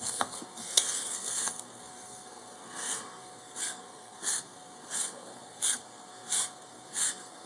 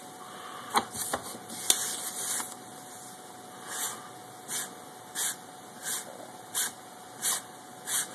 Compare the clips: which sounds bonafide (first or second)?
second